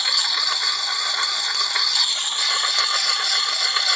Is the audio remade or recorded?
recorded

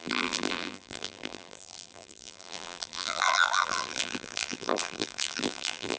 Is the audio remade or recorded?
remade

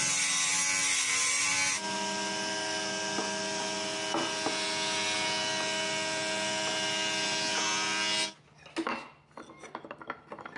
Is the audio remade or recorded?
recorded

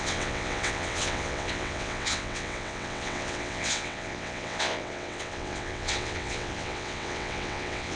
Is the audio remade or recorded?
remade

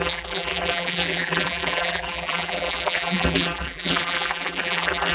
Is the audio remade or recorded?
remade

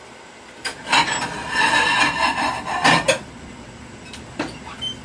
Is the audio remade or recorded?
recorded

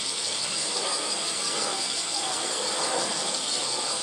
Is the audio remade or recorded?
remade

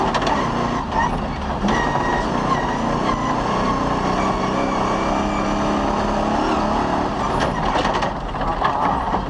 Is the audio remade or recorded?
recorded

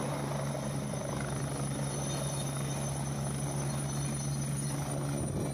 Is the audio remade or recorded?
recorded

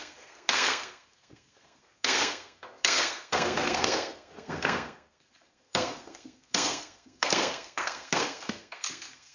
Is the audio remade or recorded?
remade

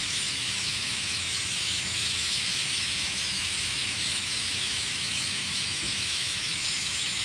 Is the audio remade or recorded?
remade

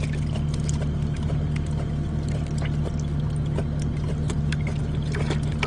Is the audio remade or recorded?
recorded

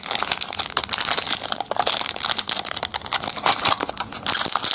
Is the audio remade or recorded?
recorded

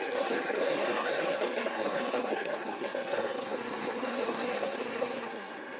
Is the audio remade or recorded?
remade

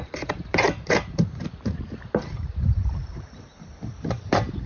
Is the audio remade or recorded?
remade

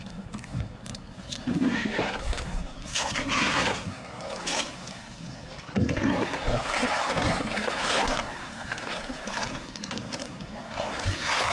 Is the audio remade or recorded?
remade